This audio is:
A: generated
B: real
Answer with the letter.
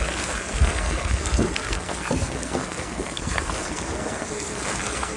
A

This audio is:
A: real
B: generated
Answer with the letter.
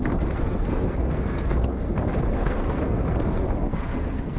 B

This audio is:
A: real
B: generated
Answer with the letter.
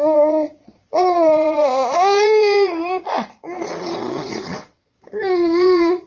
B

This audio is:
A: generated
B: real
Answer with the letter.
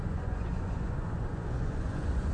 A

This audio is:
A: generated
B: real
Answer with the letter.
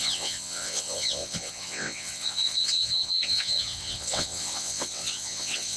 A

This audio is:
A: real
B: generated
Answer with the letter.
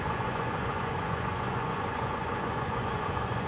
B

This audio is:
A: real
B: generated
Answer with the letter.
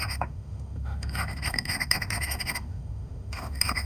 B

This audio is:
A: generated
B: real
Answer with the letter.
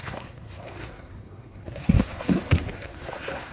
A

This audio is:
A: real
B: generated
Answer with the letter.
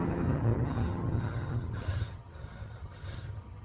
B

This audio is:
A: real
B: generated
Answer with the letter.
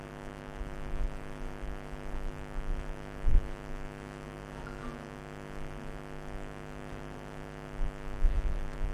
B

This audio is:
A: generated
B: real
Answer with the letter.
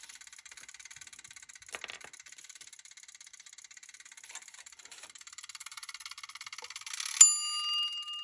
B